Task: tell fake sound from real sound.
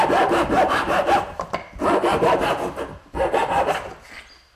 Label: real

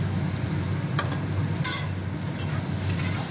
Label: real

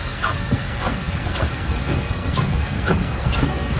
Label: fake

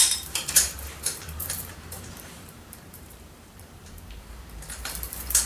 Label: fake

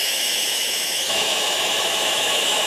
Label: fake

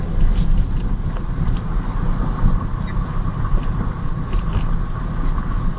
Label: real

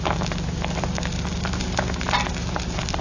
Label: real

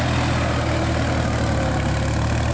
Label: real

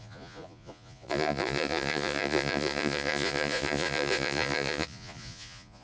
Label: fake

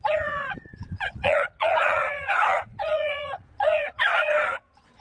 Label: fake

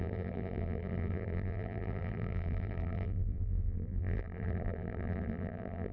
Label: fake